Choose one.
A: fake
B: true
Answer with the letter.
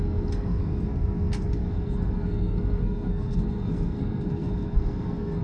A